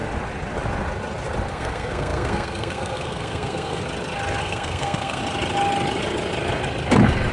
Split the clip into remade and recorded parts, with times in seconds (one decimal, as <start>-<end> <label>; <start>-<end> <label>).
0.0-1.5 recorded; 1.5-3.8 remade; 3.8-4.4 recorded; 4.4-5.2 remade; 5.2-7.3 recorded